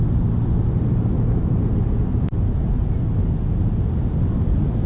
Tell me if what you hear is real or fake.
real